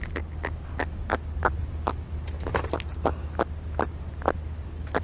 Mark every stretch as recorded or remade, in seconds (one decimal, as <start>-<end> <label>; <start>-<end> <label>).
0.0-5.0 recorded